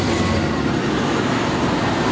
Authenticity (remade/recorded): recorded